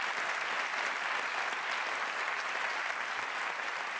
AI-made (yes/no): no